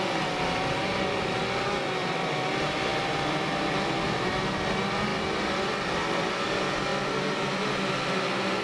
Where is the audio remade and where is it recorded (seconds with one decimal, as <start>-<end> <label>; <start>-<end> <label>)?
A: 0.0-2.0 recorded; 2.0-2.5 remade; 2.5-2.9 recorded; 2.9-4.3 remade; 4.3-6.9 recorded; 6.9-7.5 remade; 7.5-8.6 recorded